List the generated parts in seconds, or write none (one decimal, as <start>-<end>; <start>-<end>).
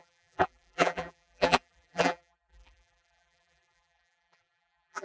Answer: 0.0-5.0